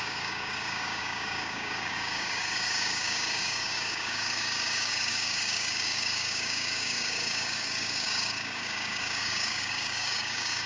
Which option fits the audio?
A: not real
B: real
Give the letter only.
A